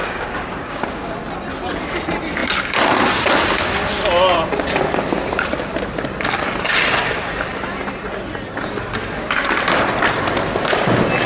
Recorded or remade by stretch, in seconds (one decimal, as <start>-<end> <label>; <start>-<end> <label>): 0.0-1.1 remade; 1.1-11.3 recorded